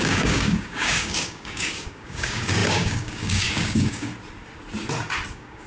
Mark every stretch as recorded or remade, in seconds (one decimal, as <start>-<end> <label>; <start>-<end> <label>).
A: 0.0-4.1 remade; 4.1-5.3 recorded; 5.3-5.7 remade